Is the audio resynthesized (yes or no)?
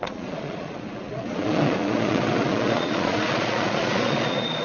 yes